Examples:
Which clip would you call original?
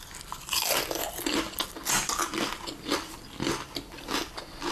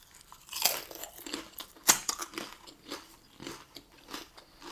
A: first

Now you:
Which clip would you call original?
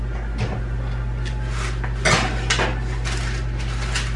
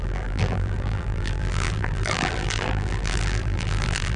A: first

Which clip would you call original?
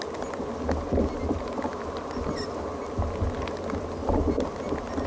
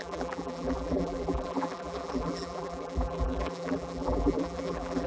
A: first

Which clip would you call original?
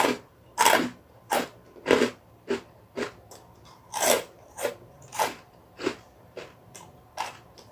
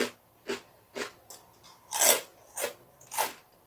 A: second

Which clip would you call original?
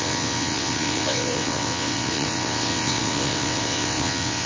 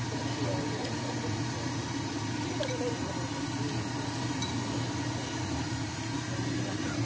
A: second